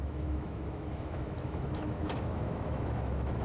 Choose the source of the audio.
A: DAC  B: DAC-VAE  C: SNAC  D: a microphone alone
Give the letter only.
B